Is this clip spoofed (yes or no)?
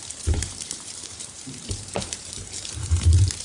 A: yes